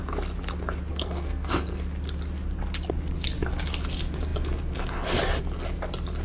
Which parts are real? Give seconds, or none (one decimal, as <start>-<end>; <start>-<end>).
0.0-0.9; 1.8-6.2